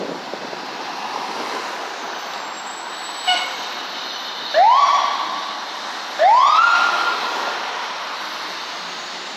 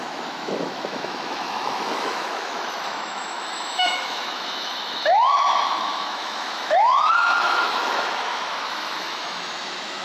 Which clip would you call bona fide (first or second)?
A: first